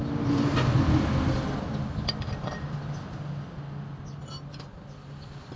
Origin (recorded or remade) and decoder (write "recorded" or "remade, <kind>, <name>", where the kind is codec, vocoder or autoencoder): recorded